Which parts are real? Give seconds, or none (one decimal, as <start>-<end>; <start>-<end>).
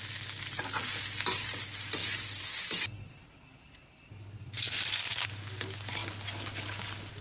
0.0-4.4; 4.9-7.2